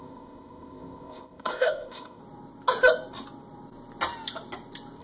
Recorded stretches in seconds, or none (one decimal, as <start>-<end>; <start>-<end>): 2.2-5.0